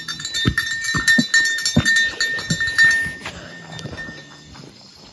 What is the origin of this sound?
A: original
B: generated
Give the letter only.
A